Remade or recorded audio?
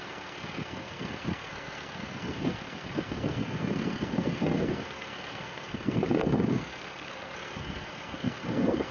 remade